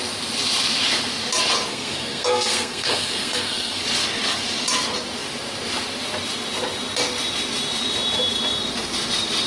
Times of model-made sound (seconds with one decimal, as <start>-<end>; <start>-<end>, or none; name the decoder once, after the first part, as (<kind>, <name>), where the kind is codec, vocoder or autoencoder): 1.7-3.8 (codec, SNAC)